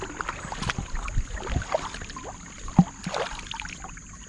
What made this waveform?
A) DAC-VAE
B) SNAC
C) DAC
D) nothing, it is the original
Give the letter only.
D